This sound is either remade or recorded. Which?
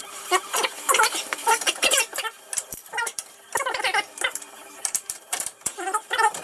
remade